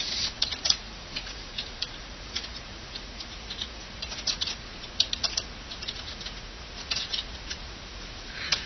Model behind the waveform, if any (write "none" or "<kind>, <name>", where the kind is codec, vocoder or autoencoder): vocoder, Vocos